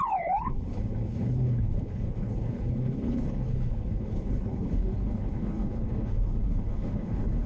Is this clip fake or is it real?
fake